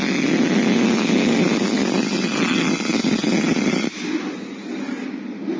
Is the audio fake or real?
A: real